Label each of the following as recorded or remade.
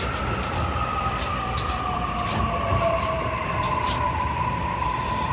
remade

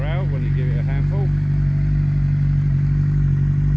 recorded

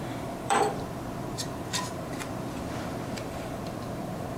remade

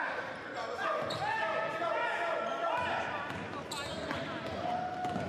recorded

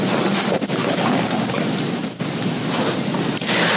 recorded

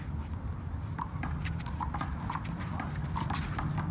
remade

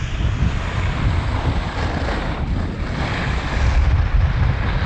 remade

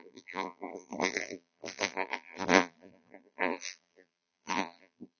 remade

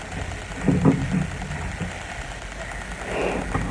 recorded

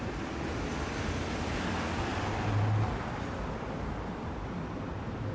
recorded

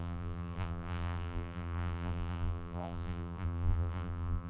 remade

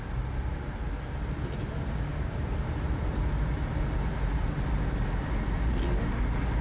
recorded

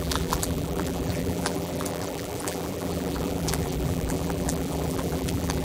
remade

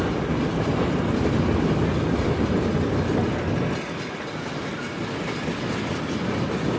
recorded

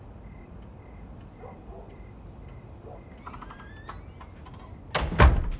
recorded